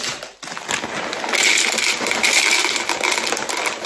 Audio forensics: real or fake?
real